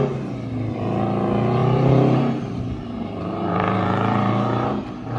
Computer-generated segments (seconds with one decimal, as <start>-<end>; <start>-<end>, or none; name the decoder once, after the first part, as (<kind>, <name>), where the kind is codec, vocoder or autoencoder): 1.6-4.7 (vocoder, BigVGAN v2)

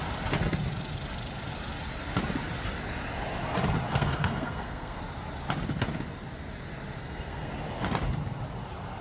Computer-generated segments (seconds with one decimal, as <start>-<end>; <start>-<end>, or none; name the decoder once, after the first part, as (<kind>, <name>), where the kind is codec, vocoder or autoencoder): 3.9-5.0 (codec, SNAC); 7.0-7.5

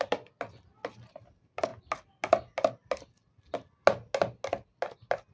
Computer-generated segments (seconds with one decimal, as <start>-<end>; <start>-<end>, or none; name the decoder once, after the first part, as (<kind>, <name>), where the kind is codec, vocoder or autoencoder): none

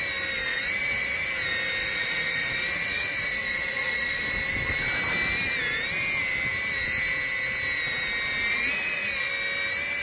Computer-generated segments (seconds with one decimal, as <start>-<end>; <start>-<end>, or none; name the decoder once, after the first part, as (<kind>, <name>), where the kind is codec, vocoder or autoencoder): 0.5-1.3 (vocoder, Vocos); 1.8-4.2; 8.5-9.3

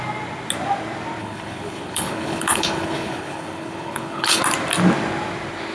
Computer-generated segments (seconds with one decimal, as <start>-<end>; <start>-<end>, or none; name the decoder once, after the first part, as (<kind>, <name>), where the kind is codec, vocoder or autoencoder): 1.2-4.4 (codec, HILCodec)

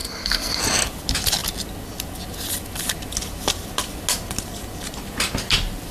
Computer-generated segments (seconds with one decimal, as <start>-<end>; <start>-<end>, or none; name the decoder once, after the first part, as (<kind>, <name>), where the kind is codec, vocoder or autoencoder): 0.0-0.6 (codec, SNAC)